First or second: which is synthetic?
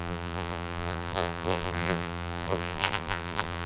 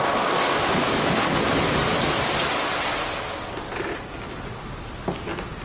first